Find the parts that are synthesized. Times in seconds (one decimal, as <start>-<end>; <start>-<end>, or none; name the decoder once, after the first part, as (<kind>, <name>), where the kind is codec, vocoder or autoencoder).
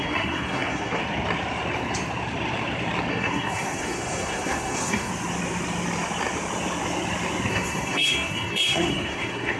0.0-1.0 (codec, SNAC); 3.1-5.1; 7.5-9.6